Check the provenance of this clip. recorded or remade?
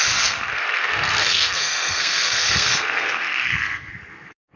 remade